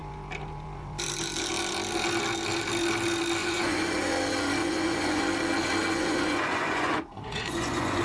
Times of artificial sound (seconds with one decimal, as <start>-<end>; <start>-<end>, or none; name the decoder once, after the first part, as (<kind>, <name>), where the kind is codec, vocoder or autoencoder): 3.4-4.1 (vocoder, Vocos); 4.6-5.2; 5.8-8.0